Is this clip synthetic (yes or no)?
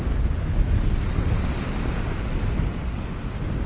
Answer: no